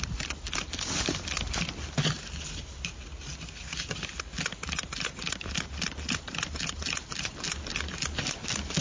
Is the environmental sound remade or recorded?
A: recorded